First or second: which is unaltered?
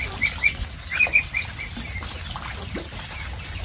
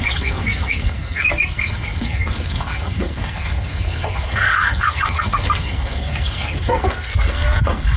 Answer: first